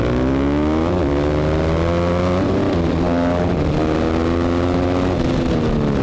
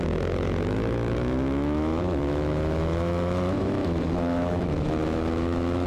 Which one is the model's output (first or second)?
second